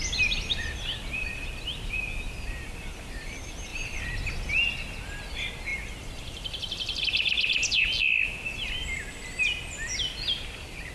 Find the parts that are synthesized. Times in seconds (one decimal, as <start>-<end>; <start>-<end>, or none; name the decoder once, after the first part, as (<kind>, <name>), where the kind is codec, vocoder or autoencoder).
none